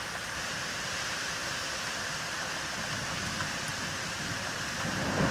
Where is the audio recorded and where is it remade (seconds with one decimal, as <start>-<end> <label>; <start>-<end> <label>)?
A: 0.0-5.3 recorded

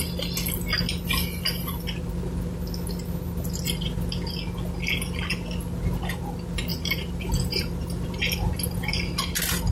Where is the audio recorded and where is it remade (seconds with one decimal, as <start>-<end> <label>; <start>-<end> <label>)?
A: 0.0-6.7 recorded; 6.7-8.2 remade; 8.2-9.7 recorded